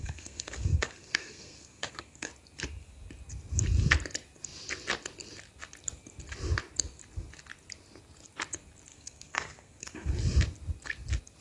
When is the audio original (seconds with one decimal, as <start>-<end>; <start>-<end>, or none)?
2.3-8.9; 10.1-11.4